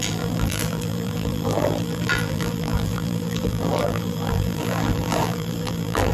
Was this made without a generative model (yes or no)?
no